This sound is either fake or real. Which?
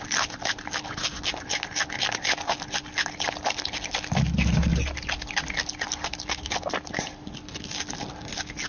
real